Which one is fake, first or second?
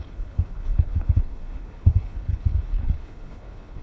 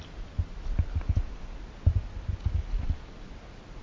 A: first